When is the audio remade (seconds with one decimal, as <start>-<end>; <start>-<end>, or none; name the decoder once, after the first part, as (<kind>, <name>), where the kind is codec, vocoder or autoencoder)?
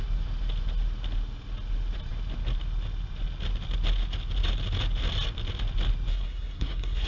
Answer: 6.1-7.1 (codec, SNAC)